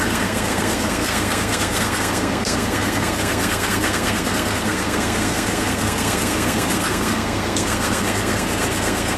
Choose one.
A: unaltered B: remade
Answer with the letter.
B